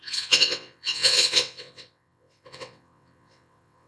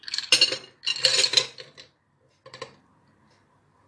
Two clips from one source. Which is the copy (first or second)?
first